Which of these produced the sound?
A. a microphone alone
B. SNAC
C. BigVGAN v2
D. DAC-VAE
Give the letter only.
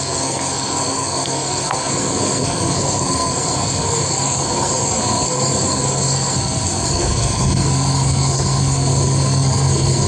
B